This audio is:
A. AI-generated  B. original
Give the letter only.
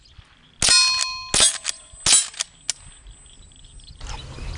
B